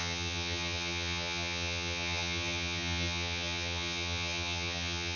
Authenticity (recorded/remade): remade